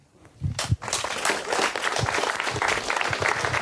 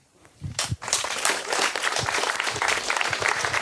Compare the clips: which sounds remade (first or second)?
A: second